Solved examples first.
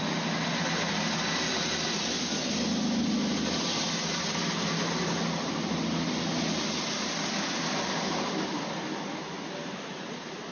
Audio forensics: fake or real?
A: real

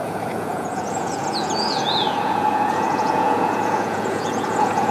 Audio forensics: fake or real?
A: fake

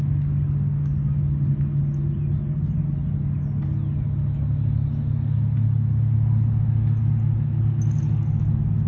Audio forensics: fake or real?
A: real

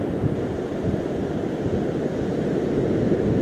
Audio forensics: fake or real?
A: real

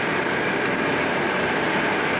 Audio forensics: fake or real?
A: fake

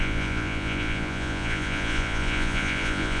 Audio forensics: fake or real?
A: fake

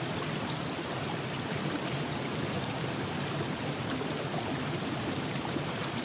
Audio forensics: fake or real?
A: fake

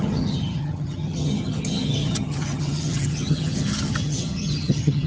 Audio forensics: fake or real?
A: fake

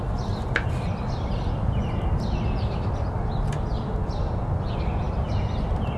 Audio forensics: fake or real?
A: real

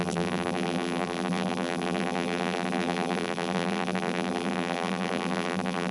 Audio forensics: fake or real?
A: fake